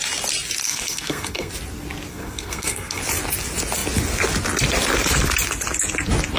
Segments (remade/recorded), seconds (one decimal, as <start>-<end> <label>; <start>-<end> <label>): 0.0-0.7 recorded; 0.7-1.5 remade; 1.5-2.1 recorded; 2.1-3.0 remade; 3.0-6.4 recorded